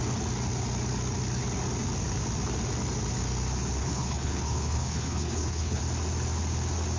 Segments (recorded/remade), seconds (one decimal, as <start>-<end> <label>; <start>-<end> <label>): 0.0-3.8 recorded; 3.8-5.8 remade; 5.8-7.0 recorded